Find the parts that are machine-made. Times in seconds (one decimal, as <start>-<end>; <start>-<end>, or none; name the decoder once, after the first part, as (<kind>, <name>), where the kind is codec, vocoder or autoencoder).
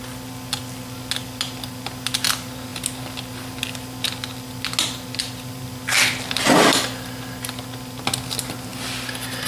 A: none